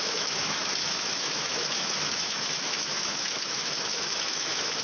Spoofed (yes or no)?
yes